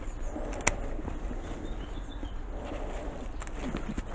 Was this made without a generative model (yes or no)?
yes